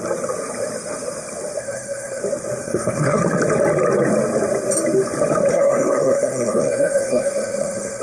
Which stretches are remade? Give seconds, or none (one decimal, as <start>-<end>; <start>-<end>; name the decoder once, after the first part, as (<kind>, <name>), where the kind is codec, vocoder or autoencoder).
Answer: 1.6-2.2 (codec, SNAC); 2.6-3.2; 5.5-8.0